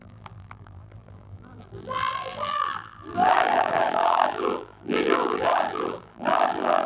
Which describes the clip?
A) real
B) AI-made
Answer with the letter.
B